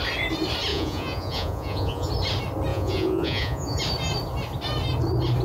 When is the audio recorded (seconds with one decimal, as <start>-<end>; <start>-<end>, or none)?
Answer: 0.0-0.7; 2.1-2.7; 3.8-5.4